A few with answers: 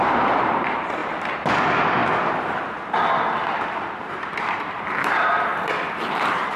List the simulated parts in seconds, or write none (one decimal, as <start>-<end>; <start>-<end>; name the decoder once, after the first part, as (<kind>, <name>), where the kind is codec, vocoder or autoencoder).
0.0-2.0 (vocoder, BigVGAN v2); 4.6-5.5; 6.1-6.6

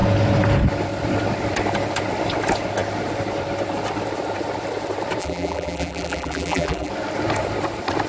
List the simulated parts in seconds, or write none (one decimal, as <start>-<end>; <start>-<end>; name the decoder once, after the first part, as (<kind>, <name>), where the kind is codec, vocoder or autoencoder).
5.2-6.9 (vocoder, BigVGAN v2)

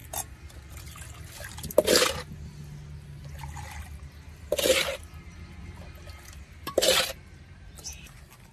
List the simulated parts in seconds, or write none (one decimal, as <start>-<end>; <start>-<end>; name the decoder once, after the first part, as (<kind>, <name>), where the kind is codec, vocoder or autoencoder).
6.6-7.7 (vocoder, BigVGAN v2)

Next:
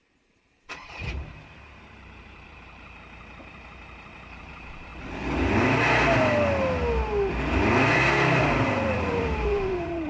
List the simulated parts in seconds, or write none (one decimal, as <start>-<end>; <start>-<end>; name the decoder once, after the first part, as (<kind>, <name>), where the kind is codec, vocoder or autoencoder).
0.0-4.9 (vocoder, BigVGAN v2); 8.4-10.1

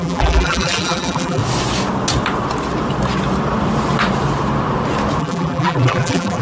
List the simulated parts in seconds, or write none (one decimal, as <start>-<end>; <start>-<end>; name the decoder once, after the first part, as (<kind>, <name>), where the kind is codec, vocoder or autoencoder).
0.0-1.4 (vocoder, BigVGAN v2); 5.2-6.4

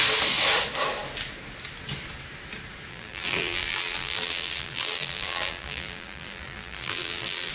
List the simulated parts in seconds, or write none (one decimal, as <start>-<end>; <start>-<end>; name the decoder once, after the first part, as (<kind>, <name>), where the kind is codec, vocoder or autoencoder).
2.9-7.5 (vocoder, BigVGAN v2)

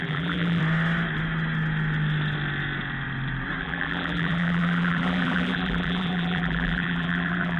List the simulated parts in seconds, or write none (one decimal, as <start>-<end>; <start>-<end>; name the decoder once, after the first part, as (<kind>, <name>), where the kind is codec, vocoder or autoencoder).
0.0-0.6 (vocoder, BigVGAN v2); 3.6-7.6